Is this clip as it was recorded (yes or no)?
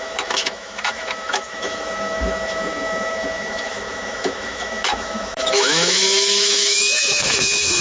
no